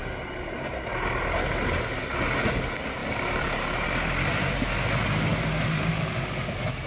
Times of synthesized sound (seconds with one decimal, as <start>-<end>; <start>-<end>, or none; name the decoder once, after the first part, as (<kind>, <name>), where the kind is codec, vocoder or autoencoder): 3.0-3.9 (vocoder, BigVGAN v2); 5.3-5.9